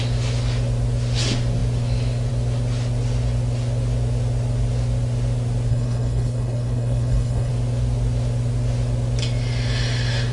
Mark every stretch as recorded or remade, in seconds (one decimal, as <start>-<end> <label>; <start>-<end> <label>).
0.0-5.7 recorded; 5.7-7.5 remade; 7.5-10.3 recorded